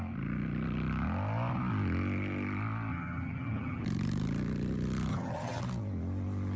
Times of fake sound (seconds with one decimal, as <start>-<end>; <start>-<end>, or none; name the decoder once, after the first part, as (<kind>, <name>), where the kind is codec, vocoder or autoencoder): 2.9-3.8 (vocoder, HiFi-GAN); 5.1-5.6